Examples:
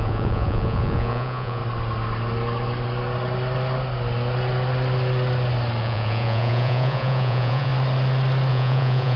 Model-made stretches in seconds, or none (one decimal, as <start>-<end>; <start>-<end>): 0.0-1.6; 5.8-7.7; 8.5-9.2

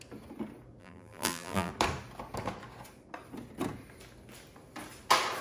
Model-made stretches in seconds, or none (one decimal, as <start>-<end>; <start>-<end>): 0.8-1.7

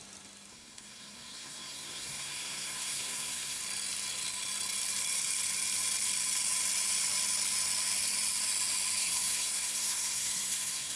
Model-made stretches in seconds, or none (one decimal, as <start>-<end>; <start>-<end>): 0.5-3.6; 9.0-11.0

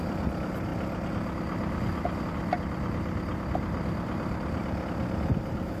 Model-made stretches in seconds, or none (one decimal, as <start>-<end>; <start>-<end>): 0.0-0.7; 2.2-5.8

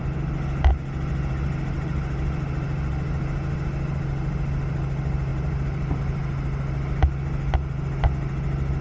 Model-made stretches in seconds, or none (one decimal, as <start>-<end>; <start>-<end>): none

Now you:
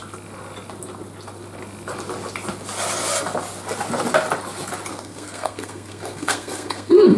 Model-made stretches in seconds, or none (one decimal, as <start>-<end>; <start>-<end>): 4.9-7.2

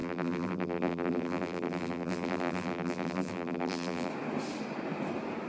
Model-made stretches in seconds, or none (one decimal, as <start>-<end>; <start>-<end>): 0.0-4.1